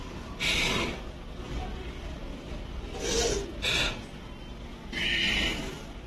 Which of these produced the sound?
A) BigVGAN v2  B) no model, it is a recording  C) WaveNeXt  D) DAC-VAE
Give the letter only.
B